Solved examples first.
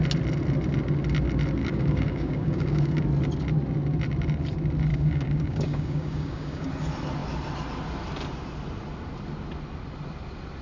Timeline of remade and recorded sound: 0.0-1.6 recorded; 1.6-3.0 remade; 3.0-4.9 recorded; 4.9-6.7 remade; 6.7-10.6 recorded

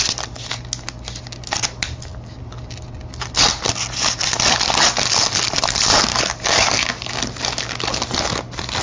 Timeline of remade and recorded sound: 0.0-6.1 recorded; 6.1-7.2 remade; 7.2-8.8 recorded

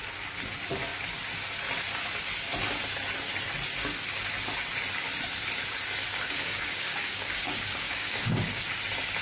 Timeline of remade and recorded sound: 0.0-6.0 recorded; 6.0-8.6 remade; 8.6-9.2 recorded

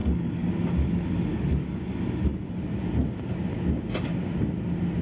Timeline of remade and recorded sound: 0.0-0.5 remade; 0.5-1.3 recorded; 1.3-1.8 remade; 1.8-5.0 recorded

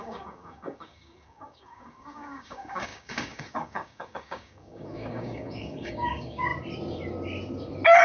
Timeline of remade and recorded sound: 0.0-6.5 remade; 6.5-8.0 recorded